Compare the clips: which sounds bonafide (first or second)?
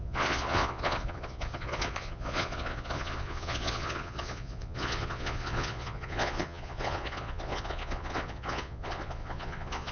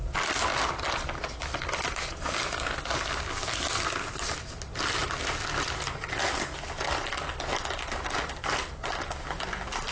second